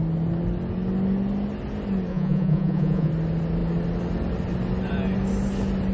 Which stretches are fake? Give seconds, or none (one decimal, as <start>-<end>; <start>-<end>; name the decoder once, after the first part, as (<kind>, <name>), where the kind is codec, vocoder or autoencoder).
2.1-3.1 (vocoder, Vocos)